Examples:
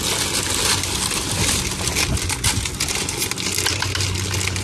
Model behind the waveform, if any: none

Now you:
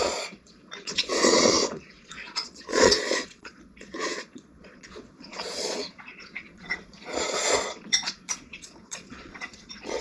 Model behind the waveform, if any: vocoder, Vocos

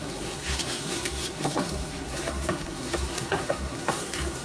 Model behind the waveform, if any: codec, SNAC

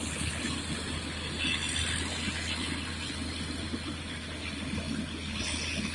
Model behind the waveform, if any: none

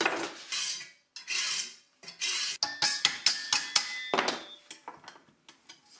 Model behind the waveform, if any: none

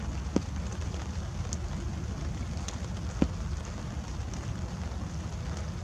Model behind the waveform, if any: none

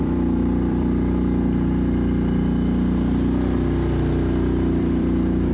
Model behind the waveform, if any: vocoder, BigVGAN v2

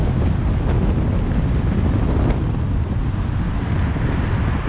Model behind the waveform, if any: none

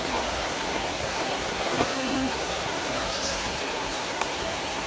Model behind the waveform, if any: codec, SNAC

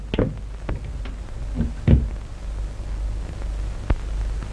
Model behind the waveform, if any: none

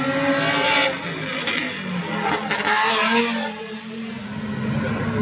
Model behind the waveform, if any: none